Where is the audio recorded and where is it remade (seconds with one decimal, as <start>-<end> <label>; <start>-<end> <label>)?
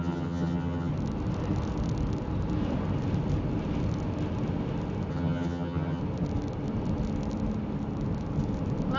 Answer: 0.0-0.9 remade; 0.9-5.1 recorded; 5.1-6.0 remade; 6.0-9.0 recorded